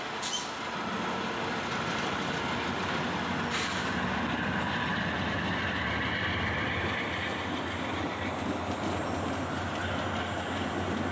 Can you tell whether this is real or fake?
real